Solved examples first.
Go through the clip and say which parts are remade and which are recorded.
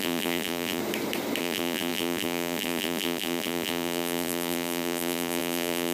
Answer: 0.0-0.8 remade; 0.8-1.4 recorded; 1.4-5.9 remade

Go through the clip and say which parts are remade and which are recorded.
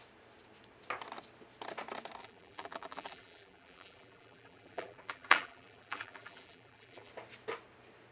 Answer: 0.0-2.2 recorded; 2.2-7.1 remade; 7.1-8.1 recorded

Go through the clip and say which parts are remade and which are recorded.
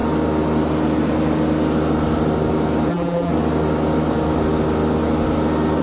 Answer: 0.0-2.9 recorded; 2.9-3.3 remade; 3.3-5.8 recorded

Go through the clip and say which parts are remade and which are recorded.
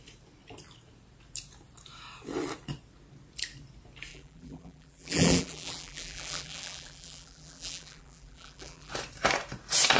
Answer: 0.0-4.1 recorded; 4.1-8.9 remade; 8.9-10.0 recorded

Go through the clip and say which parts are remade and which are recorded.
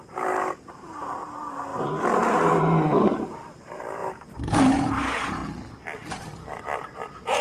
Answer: 0.0-5.4 remade; 5.4-6.6 recorded; 6.6-7.4 remade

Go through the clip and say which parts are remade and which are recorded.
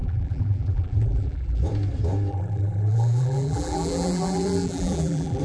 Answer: 0.0-1.6 remade; 1.6-2.3 recorded; 2.3-5.4 remade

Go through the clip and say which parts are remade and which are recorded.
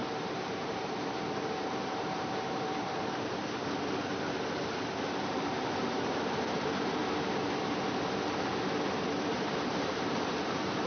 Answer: 0.0-3.4 remade; 3.4-5.3 recorded; 5.3-7.0 remade; 7.0-9.3 recorded; 9.3-10.9 remade